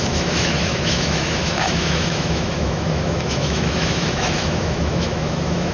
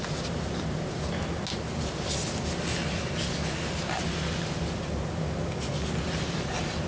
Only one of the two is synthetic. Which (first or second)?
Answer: first